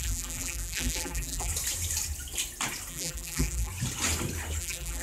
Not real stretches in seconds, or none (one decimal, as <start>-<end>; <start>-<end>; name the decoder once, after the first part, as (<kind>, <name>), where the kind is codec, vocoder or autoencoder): 0.0-1.5 (vocoder, BigVGAN v2); 2.9-3.7; 4.6-5.0